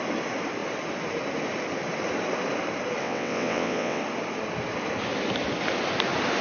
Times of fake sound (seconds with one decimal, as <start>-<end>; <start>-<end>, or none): 3.0-4.0